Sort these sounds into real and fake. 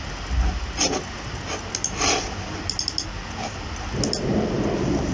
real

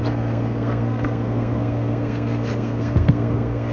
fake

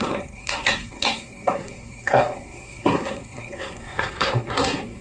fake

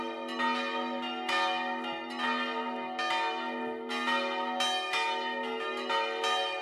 real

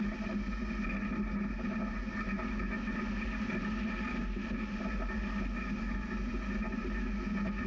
real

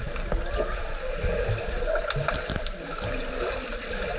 real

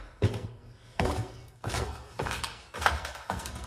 fake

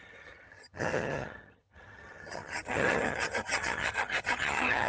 fake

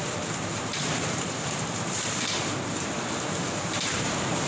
fake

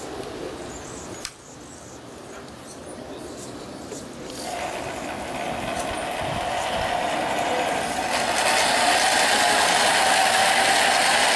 real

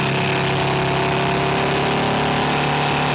real